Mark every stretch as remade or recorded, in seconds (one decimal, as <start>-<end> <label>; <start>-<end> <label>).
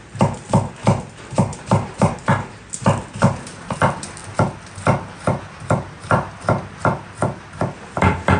0.0-1.5 recorded; 1.5-2.1 remade; 2.1-8.4 recorded